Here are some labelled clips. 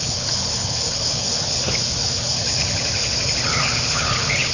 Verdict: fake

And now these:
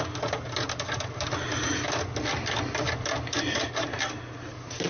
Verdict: real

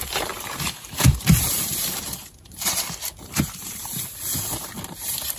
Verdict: fake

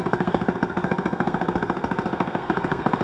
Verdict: fake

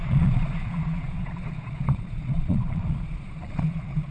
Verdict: fake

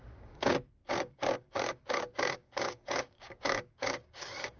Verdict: fake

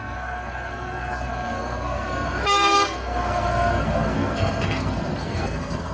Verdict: fake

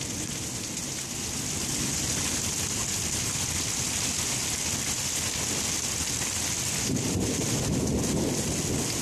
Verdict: real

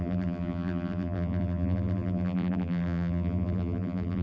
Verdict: fake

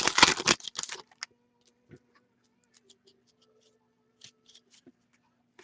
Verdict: real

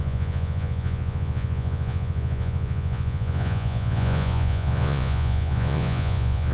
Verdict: fake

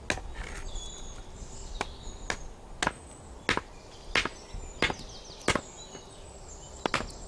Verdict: real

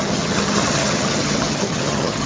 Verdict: fake